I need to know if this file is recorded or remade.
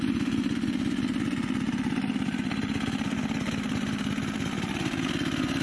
recorded